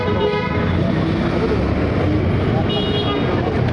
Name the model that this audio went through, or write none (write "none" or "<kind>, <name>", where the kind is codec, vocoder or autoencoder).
none